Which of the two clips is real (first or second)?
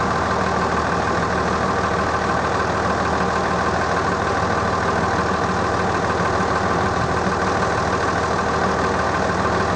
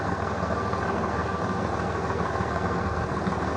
first